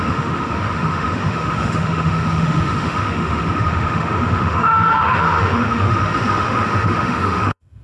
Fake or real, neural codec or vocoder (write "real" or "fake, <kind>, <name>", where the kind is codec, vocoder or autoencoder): fake, autoencoder, DAC-VAE